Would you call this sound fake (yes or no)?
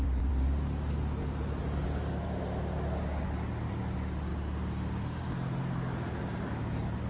no